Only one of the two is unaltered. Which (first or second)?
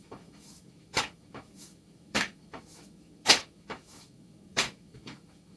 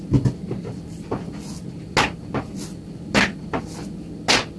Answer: second